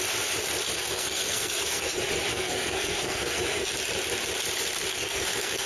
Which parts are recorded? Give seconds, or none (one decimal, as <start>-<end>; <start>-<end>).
0.0-0.7; 1.9-2.3; 3.7-4.9

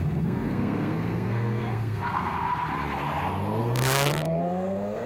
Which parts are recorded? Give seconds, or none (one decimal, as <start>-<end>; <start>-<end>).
2.5-3.6

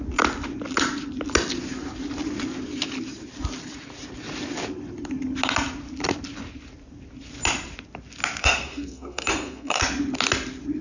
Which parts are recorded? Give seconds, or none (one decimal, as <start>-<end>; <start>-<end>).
0.0-8.4; 9.8-10.8

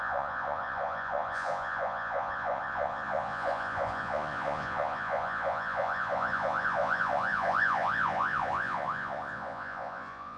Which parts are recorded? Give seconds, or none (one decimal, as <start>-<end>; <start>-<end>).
none

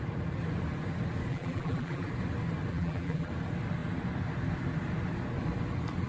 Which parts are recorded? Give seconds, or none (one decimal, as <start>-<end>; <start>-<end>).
0.0-1.3; 2.1-2.7; 3.3-6.1

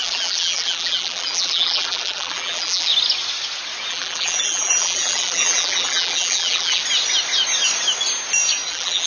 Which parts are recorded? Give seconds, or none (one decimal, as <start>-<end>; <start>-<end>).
2.9-3.9; 6.8-8.7

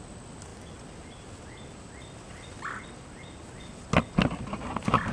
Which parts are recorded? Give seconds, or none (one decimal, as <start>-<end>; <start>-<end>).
0.0-5.1